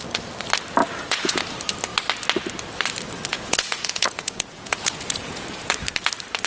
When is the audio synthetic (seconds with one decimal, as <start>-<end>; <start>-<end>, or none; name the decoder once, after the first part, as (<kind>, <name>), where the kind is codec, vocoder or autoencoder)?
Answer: 0.8-1.4 (vocoder, Vocos); 3.3-5.7